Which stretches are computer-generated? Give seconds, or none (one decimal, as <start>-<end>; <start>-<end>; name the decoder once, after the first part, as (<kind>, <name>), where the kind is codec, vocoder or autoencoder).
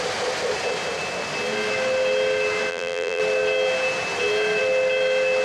2.7-3.2 (vocoder, BigVGAN v2)